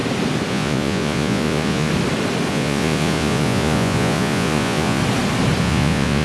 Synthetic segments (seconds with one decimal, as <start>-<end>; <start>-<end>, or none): 0.5-1.9; 2.5-5.0; 5.6-6.2